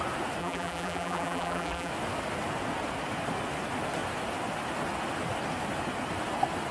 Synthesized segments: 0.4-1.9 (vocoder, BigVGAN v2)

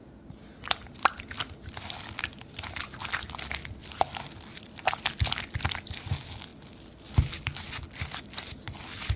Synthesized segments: none

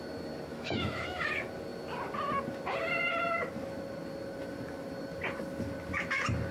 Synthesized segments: 0.5-1.2 (autoencoder, DAC-VAE)

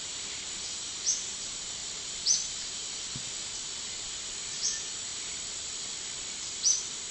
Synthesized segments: none

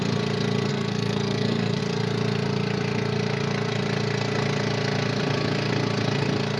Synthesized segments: 0.7-1.8 (codec, SNAC)

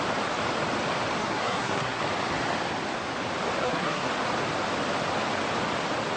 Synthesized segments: 1.2-2.0 (codec, SNAC); 3.6-4.1